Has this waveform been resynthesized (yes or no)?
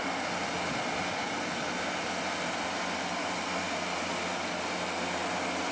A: no